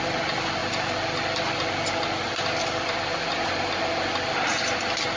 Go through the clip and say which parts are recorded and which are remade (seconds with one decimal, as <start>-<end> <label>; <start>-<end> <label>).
0.0-5.2 recorded